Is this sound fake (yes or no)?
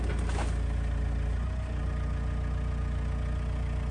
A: no